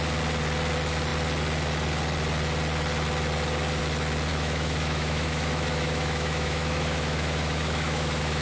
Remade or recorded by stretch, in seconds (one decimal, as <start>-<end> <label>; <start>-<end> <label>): 0.0-4.3 recorded; 4.3-8.4 remade